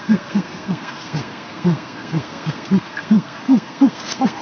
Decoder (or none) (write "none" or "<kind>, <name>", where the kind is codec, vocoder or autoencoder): codec, SNAC